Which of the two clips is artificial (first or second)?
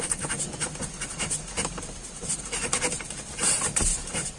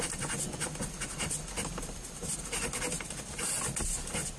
first